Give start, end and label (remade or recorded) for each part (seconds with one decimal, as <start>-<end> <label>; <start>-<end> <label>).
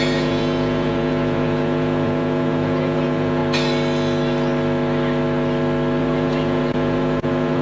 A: 0.0-3.4 remade; 3.4-6.0 recorded; 6.0-7.6 remade